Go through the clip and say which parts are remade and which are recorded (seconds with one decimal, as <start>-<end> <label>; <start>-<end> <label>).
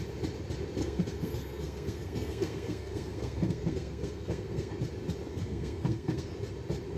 0.0-0.8 recorded; 0.8-4.7 remade; 4.7-5.3 recorded; 5.3-6.3 remade; 6.3-7.0 recorded